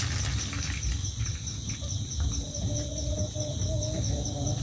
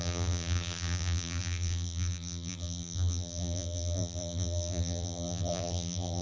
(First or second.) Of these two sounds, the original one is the first